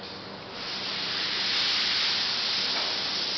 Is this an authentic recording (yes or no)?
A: yes